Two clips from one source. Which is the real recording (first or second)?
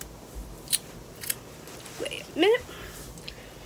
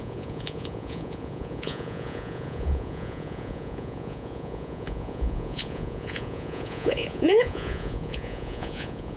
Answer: first